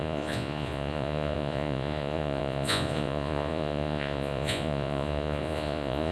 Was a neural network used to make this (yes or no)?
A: yes